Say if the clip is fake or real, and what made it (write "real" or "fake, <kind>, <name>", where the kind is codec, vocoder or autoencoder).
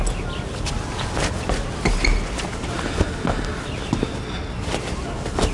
real